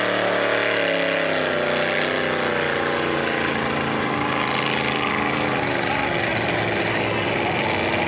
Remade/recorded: recorded